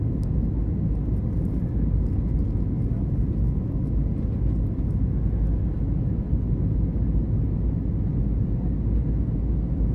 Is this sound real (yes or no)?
yes